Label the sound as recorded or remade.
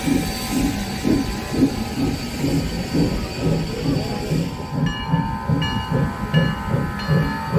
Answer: recorded